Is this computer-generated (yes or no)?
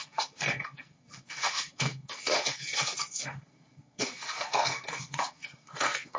yes